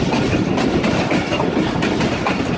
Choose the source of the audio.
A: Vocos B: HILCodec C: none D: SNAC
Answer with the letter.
C